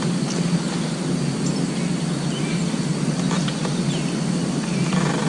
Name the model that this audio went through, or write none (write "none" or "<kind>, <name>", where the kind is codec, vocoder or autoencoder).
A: none